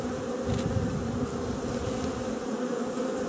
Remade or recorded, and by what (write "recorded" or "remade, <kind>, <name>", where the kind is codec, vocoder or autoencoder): recorded